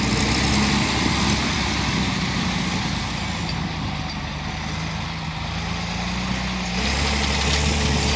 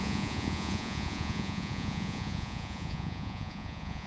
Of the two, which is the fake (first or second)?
second